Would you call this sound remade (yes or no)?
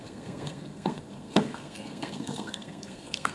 yes